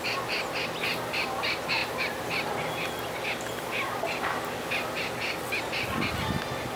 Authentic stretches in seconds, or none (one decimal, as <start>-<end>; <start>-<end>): 0.0-6.8